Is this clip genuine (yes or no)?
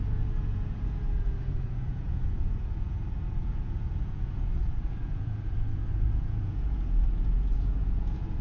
no